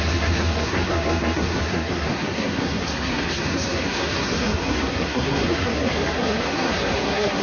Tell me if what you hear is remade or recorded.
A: remade